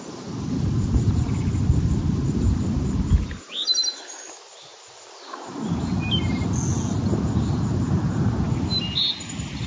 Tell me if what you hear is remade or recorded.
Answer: recorded